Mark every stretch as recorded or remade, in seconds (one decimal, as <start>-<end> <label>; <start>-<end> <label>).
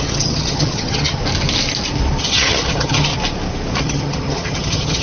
0.0-1.2 remade; 1.2-2.2 recorded; 2.2-3.1 remade; 3.1-3.8 recorded; 3.8-5.0 remade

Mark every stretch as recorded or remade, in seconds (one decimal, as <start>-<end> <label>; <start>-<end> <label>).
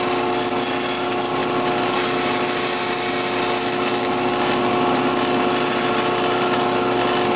0.0-7.4 recorded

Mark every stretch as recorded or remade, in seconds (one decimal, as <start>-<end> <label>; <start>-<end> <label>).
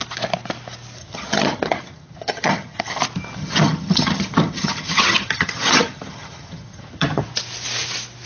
0.0-1.0 recorded; 1.0-3.0 remade; 3.0-3.4 recorded; 3.4-7.2 remade; 7.2-8.3 recorded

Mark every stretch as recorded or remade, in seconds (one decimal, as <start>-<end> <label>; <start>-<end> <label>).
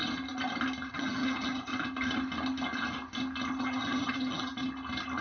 0.0-0.9 recorded; 0.9-1.7 remade; 1.7-3.6 recorded; 3.6-4.5 remade; 4.5-5.2 recorded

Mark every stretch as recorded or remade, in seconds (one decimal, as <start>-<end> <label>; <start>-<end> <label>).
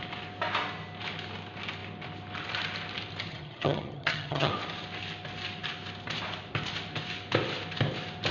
0.0-3.3 recorded; 3.3-4.5 remade; 4.5-8.3 recorded